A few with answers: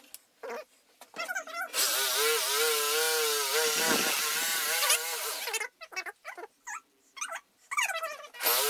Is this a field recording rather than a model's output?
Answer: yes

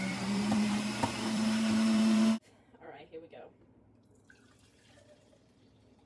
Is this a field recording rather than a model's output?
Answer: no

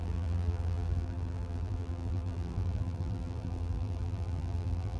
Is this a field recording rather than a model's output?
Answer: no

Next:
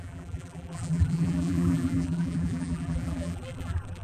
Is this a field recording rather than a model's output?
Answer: no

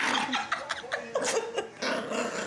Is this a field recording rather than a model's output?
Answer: yes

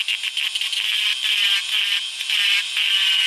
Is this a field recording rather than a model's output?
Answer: yes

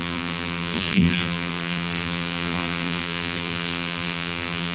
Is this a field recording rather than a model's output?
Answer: no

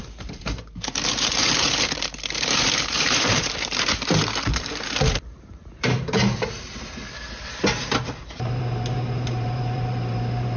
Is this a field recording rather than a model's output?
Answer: no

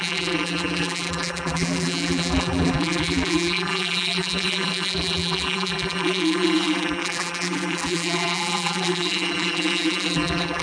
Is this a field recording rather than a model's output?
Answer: no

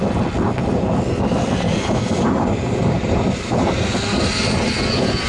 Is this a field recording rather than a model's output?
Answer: yes